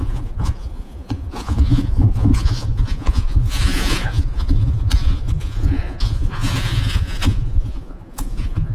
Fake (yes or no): yes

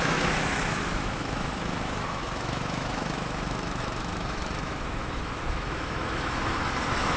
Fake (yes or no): yes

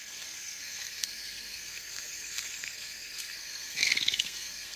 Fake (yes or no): yes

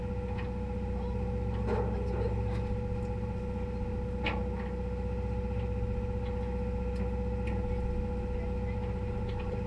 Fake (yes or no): no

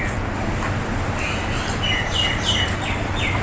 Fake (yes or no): no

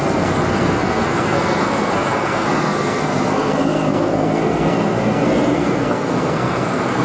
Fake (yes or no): yes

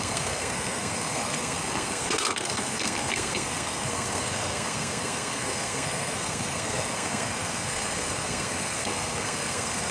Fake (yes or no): yes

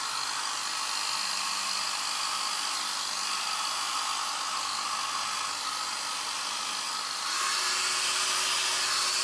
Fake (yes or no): no